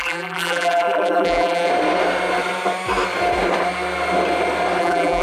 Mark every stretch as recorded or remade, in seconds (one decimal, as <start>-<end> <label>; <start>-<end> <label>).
0.0-1.7 remade; 1.7-4.8 recorded; 4.8-5.2 remade